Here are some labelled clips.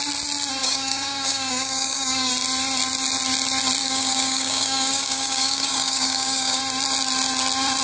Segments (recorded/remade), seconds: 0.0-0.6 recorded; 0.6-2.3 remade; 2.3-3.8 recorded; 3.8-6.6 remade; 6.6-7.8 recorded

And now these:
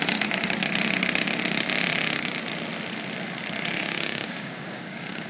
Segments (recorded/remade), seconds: 0.0-3.8 recorded; 3.8-5.3 remade

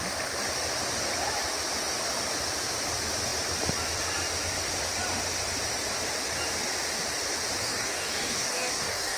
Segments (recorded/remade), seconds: 0.0-7.6 recorded; 7.6-9.2 remade

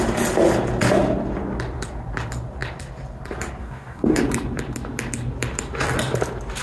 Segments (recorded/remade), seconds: 0.0-3.6 recorded; 3.6-4.2 remade; 4.2-6.6 recorded

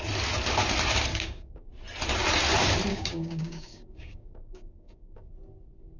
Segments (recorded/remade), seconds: 0.0-1.1 recorded; 1.1-1.7 remade; 1.7-2.9 recorded; 2.9-5.3 remade; 5.3-6.0 recorded

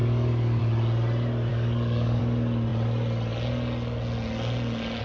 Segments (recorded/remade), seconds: 0.0-0.6 remade; 0.6-1.5 recorded; 1.5-2.2 remade; 2.2-5.0 recorded